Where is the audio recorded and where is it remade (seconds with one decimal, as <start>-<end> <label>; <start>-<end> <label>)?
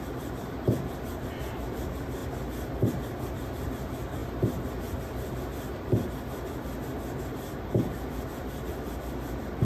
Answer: 0.0-2.2 remade; 2.2-2.7 recorded; 2.7-4.2 remade; 4.2-7.6 recorded; 7.6-9.6 remade